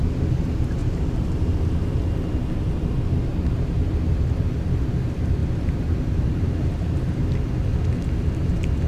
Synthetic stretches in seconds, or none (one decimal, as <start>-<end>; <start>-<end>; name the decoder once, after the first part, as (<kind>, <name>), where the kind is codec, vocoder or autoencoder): 0.8-2.0 (vocoder, BigVGAN v2); 3.3-3.9; 5.4-7.1

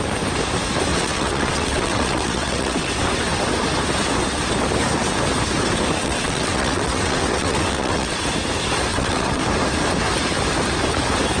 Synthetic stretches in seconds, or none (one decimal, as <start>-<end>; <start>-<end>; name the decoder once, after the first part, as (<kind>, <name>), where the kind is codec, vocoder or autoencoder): 0.9-2.9 (vocoder, WaveNeXt); 6.0-8.2; 8.9-9.4

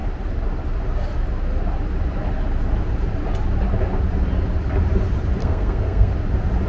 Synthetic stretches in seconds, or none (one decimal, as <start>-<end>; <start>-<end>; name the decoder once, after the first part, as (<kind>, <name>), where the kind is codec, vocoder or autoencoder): 5.4-6.1 (codec, SNAC)

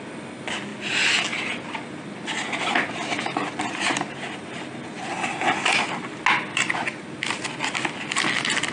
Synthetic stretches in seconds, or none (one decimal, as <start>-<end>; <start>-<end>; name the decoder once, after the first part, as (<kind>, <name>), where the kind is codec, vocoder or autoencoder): none

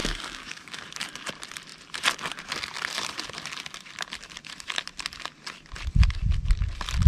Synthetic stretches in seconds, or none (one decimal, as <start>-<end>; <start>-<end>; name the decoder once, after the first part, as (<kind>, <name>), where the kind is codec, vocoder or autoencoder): 0.0-0.8 (codec, DAC)

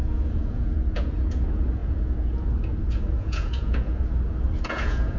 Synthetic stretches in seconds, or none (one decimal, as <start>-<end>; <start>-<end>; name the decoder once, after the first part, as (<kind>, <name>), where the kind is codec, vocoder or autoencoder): 0.0-4.0 (vocoder, Vocos); 4.6-5.2